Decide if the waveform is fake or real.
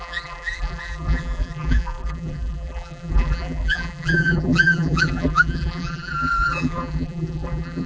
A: fake